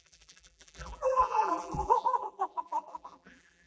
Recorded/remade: remade